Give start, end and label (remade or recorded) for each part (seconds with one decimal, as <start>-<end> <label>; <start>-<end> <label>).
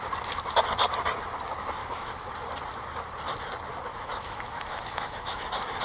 0.0-1.8 recorded; 1.8-2.3 remade; 2.3-3.9 recorded; 3.9-5.8 remade